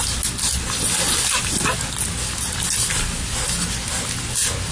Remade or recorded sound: recorded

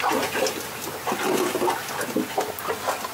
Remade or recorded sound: recorded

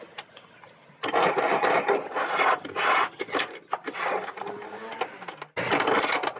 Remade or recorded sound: recorded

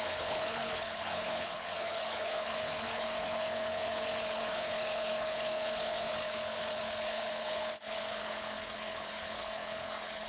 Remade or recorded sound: remade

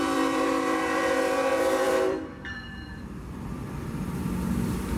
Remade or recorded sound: remade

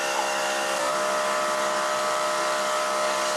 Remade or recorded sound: remade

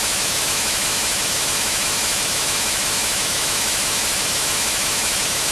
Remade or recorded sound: remade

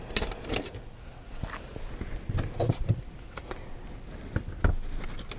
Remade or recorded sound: recorded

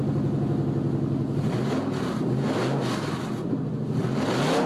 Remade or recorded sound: recorded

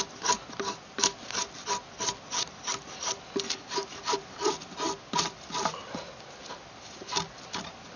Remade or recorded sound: recorded